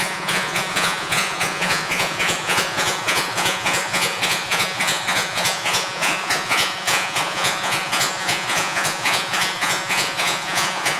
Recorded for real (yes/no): no